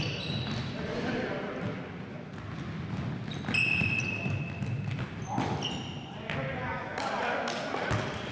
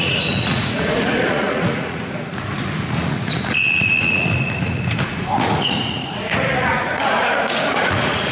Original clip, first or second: first